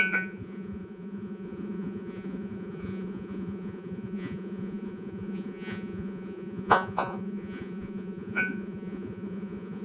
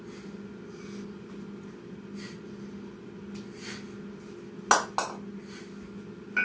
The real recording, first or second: second